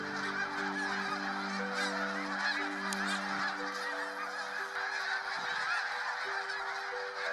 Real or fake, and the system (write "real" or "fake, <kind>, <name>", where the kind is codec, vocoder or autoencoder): real